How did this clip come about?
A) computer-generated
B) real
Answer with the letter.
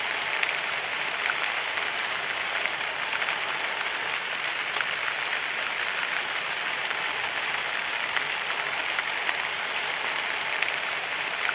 B